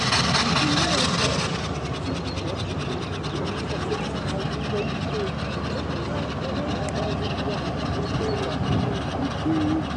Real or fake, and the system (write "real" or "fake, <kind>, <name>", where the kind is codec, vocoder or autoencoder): real